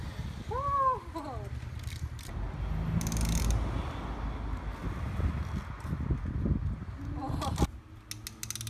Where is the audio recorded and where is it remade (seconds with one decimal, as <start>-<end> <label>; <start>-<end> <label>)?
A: 0.0-8.7 recorded